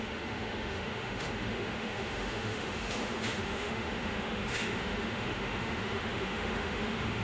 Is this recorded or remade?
remade